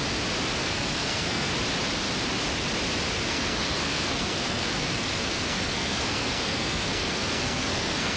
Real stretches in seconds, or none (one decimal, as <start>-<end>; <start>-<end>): 0.0-0.6; 1.5-3.2